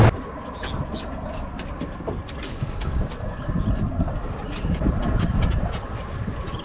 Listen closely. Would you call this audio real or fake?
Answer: real